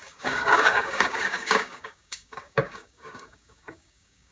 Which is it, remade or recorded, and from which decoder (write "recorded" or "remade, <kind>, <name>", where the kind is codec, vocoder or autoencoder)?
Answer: remade, codec, DAC